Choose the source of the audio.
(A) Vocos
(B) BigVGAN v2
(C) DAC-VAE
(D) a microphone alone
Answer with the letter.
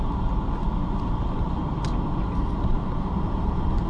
D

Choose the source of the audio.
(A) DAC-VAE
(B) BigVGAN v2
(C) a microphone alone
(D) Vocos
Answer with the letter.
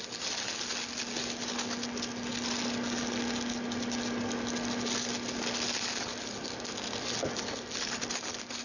C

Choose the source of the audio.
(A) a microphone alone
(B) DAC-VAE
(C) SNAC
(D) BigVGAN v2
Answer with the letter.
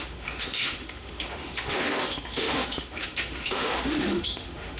B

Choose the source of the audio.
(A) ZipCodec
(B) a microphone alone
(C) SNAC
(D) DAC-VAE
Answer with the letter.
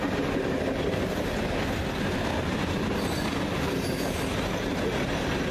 B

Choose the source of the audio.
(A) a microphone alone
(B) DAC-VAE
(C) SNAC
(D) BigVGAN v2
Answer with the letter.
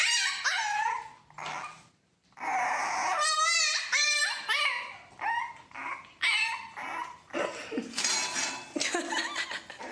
A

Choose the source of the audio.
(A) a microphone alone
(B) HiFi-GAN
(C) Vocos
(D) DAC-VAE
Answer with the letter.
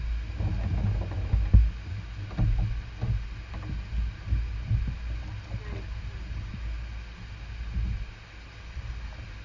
A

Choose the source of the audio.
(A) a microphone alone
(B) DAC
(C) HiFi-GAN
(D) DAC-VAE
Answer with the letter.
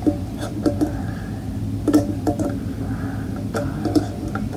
A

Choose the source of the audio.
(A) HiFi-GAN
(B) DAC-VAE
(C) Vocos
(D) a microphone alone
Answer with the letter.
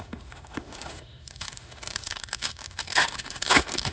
B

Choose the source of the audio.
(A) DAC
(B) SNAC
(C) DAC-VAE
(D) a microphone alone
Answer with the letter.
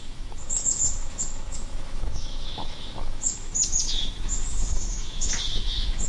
C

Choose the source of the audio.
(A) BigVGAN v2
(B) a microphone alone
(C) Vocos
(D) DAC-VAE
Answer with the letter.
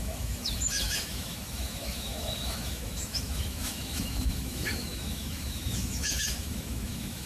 D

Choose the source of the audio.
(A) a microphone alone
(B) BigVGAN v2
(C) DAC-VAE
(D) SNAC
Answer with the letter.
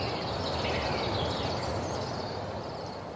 A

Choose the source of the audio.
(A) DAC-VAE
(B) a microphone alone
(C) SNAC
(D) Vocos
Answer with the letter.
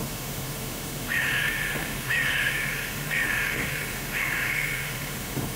A